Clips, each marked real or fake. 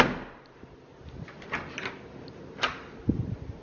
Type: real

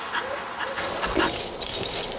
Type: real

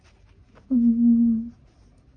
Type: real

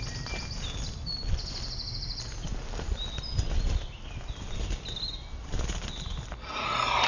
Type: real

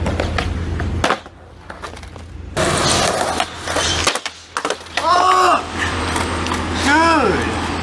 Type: real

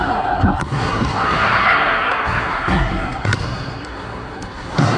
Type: fake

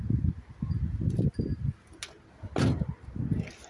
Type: real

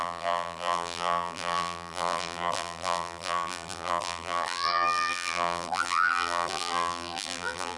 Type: fake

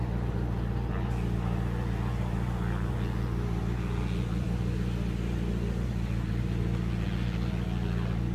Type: real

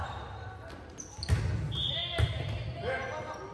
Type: real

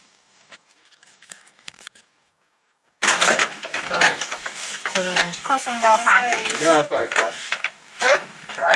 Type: fake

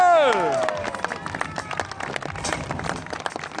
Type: real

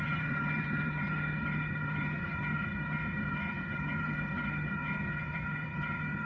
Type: fake